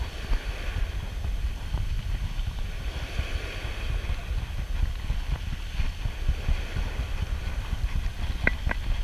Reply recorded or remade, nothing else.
recorded